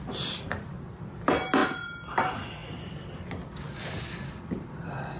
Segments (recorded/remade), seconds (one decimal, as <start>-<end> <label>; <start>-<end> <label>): 0.0-5.2 recorded